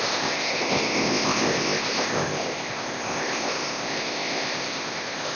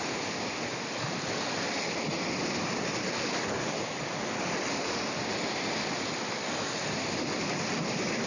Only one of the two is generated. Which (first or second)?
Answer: first